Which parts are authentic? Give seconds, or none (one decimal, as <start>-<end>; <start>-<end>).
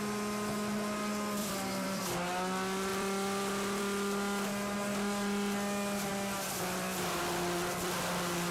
0.0-1.4; 2.0-2.9; 3.8-6.1; 7.2-8.5